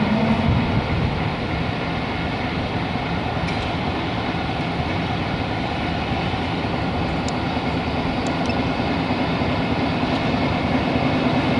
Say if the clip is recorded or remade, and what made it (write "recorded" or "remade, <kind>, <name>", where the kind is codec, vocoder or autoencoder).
recorded